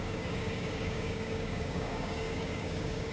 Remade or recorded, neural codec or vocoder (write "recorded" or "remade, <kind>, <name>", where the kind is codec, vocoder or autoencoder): remade, codec, DAC